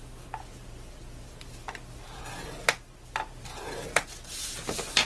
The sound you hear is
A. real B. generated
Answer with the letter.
A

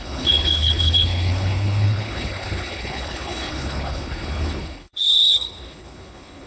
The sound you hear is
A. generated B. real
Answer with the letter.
A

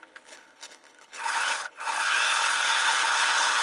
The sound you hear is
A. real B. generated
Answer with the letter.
B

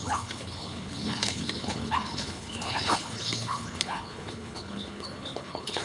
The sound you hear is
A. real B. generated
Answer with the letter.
B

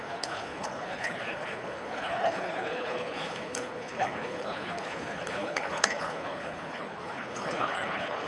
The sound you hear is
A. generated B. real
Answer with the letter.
A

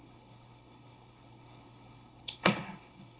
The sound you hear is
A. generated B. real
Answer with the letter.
A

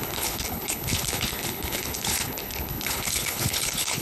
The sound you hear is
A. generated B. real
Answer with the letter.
A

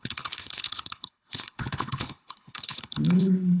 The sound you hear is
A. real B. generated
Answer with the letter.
B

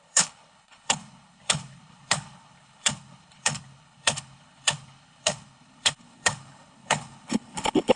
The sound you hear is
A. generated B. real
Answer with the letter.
A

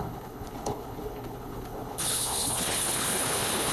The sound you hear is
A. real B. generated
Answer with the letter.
B